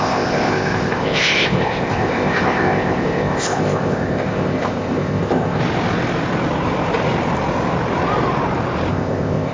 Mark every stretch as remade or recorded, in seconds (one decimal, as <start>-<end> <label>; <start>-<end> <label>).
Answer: 0.0-5.6 remade; 5.6-8.9 recorded; 8.9-9.5 remade